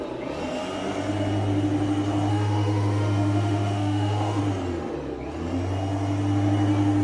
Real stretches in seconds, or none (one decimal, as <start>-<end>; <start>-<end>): 0.0-2.3; 4.4-7.0